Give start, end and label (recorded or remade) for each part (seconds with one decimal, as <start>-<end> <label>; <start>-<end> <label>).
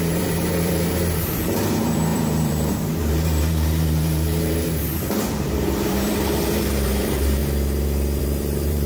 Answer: 0.0-7.4 remade; 7.4-8.2 recorded; 8.2-8.9 remade